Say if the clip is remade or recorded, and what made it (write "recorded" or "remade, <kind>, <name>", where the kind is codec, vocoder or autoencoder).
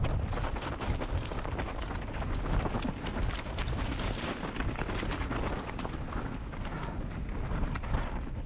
recorded